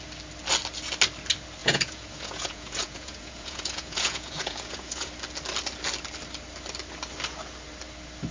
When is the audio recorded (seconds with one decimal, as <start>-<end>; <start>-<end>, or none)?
0.0-1.6; 5.1-8.3